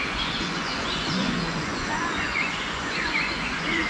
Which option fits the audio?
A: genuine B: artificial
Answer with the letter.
B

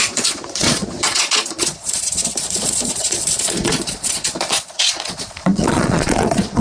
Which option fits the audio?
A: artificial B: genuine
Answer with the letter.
A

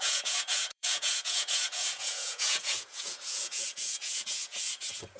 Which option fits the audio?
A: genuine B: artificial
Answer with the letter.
B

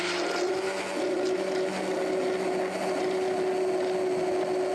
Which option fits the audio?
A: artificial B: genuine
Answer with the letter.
B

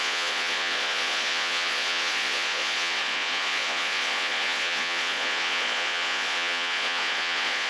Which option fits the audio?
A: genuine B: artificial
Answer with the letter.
B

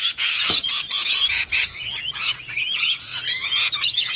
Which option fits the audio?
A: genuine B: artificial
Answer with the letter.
B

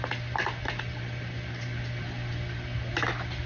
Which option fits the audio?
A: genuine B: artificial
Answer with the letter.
A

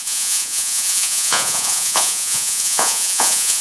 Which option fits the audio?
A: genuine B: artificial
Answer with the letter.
B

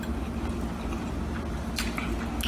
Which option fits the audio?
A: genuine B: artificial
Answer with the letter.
A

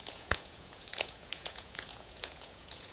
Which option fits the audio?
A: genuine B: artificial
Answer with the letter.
B